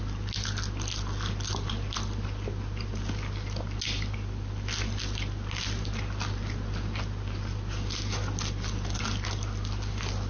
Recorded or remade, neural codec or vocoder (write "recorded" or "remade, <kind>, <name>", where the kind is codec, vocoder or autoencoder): recorded